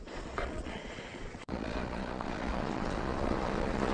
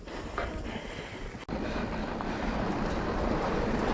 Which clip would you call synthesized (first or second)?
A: first